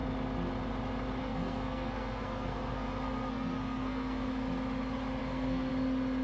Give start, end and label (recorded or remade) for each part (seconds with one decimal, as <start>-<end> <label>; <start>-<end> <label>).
0.0-1.2 recorded; 1.2-4.3 remade; 4.3-5.2 recorded; 5.2-5.7 remade; 5.7-6.2 recorded